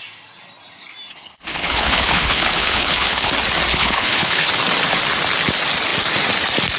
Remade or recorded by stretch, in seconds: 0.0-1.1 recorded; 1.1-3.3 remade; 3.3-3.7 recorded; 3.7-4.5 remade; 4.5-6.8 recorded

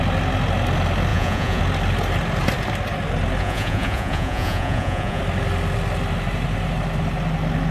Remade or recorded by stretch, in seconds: 0.0-1.1 recorded; 1.1-1.6 remade; 1.6-3.4 recorded; 3.4-5.2 remade; 5.2-7.7 recorded